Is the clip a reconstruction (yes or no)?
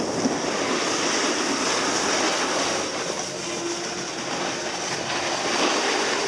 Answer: no